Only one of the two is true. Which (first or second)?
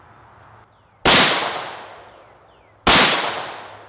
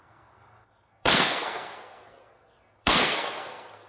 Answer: first